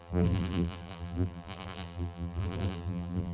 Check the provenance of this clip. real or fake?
fake